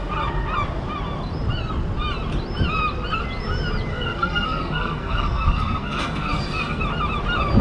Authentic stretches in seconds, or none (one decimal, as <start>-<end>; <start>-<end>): 0.0-3.9; 6.8-7.6